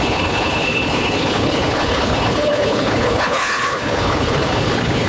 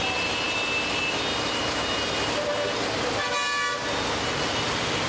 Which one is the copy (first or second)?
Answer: first